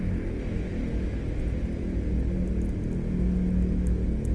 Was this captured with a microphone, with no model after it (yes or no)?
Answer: yes